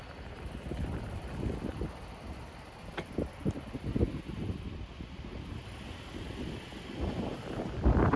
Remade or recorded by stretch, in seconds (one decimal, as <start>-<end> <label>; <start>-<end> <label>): 0.0-1.7 recorded; 1.7-2.3 remade; 2.3-8.2 recorded